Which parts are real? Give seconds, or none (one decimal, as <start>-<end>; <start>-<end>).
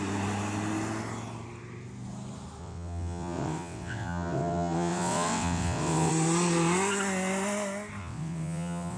0.0-2.6; 6.1-8.0